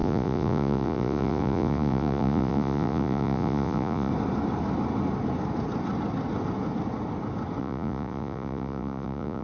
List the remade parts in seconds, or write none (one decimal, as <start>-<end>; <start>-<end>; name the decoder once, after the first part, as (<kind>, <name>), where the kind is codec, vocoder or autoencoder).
0.0-4.1 (vocoder, Vocos); 7.6-9.4